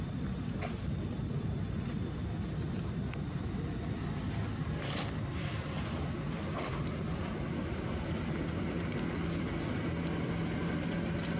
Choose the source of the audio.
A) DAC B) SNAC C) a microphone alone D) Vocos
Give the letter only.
C